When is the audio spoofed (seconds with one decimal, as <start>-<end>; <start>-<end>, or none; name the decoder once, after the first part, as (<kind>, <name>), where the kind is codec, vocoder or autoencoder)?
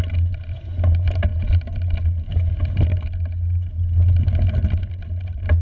none